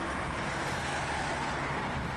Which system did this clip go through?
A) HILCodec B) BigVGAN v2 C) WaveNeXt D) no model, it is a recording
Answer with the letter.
D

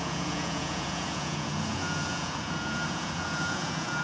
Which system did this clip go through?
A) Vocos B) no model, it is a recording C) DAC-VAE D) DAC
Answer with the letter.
A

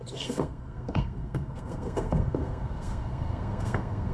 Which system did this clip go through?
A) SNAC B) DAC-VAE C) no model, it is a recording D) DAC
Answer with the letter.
A